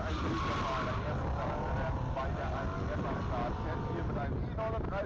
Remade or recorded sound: recorded